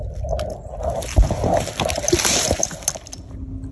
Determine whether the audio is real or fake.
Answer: real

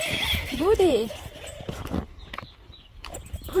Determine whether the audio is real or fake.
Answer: fake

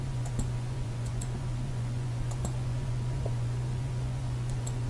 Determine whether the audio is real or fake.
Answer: fake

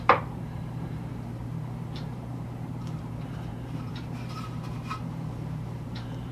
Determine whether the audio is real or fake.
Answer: fake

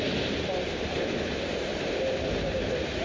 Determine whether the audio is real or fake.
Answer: fake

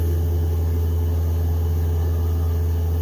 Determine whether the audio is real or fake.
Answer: real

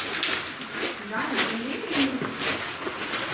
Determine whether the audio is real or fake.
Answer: real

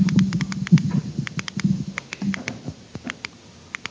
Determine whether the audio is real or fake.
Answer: real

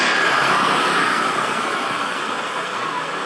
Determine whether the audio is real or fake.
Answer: fake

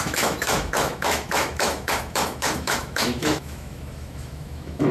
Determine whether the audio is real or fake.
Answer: fake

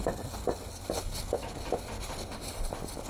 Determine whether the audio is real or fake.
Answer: real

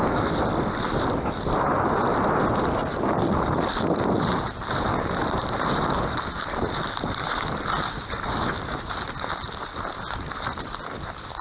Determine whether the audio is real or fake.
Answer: real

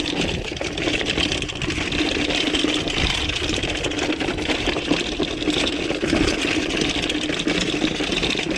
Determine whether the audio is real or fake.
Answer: real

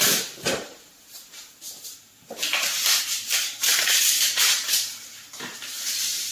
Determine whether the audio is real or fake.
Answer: fake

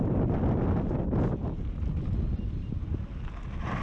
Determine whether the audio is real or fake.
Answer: real